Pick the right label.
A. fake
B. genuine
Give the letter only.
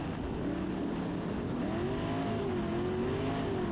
B